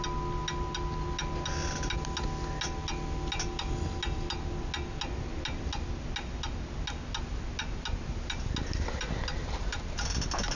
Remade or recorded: recorded